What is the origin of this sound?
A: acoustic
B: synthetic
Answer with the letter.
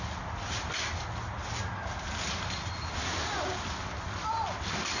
A